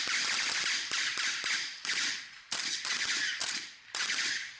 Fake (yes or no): no